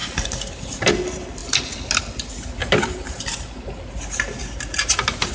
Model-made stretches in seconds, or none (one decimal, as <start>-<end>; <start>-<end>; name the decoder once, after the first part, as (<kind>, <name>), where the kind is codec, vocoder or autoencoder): 0.0-0.9 (vocoder, BigVGAN v2); 2.6-4.4

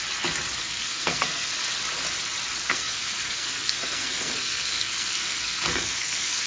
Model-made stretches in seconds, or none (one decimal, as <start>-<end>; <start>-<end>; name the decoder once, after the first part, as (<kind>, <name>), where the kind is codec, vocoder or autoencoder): 0.6-1.5 (codec, SNAC); 2.6-6.5

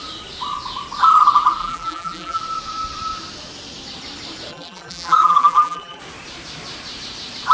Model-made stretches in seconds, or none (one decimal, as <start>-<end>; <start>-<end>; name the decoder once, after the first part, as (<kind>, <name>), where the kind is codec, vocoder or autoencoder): 1.6-2.4 (vocoder, BigVGAN v2); 4.5-6.0

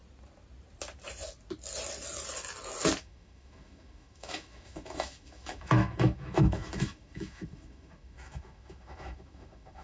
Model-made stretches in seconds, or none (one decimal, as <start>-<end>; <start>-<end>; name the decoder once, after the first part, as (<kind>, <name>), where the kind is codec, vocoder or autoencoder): 3.0-9.8 (autoencoder, DAC-VAE)

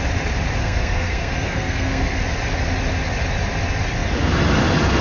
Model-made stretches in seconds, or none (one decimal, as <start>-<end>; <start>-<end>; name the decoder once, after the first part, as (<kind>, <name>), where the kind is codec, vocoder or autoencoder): 0.6-2.2 (codec, SNAC)

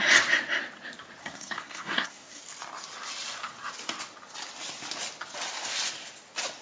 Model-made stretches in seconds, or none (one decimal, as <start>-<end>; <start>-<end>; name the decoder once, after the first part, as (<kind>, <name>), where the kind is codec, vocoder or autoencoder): 1.2-2.4 (codec, SNAC)

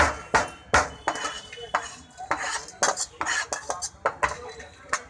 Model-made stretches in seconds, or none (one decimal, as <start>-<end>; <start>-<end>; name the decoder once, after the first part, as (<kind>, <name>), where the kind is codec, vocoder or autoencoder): none

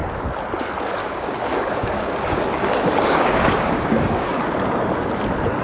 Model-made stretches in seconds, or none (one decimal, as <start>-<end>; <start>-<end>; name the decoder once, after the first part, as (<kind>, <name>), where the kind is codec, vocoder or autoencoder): 1.0-4.4 (codec, DAC)